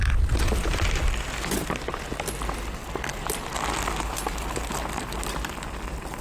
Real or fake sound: real